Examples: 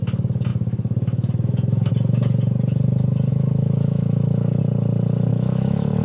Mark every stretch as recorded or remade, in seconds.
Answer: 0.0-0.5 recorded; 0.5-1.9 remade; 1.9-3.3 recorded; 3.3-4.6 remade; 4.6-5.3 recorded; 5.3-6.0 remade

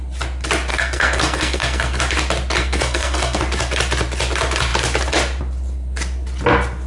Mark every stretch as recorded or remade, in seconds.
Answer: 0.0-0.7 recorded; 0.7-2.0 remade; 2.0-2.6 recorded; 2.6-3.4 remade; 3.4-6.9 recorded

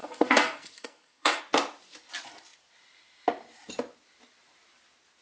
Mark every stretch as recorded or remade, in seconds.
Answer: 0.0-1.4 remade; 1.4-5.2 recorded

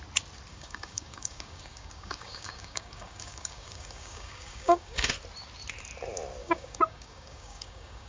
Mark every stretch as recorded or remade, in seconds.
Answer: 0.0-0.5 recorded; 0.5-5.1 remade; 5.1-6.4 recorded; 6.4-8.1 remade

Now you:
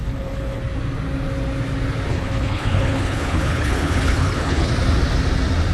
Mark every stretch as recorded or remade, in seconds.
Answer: 0.0-0.6 remade; 0.6-2.1 recorded; 2.1-4.7 remade; 4.7-5.7 recorded

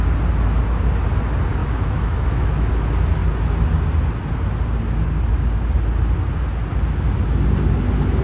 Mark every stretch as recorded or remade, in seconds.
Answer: 0.0-1.6 recorded; 1.6-2.7 remade; 2.7-8.2 recorded

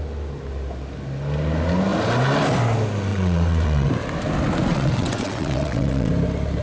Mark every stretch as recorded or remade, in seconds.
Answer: 0.0-3.1 recorded; 3.1-3.9 remade; 3.9-4.7 recorded; 4.7-6.1 remade; 6.1-6.6 recorded